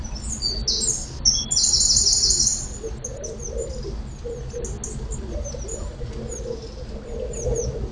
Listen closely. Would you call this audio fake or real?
real